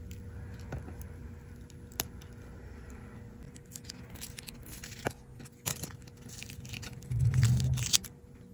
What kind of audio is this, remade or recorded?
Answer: recorded